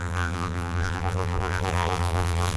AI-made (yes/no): yes